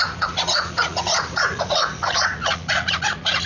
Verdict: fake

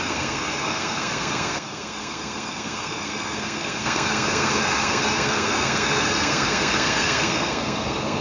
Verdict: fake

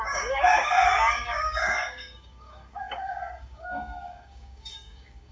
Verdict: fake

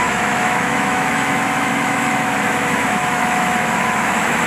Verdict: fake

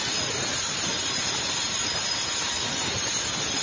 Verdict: real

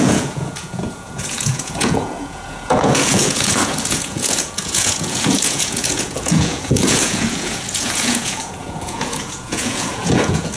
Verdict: fake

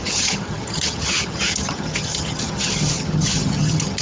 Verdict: fake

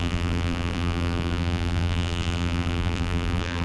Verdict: fake